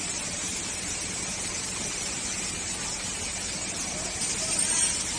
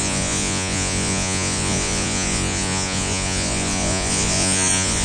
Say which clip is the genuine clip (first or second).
first